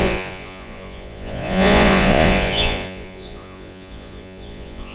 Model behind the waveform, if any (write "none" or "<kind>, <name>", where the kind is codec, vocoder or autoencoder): vocoder, Vocos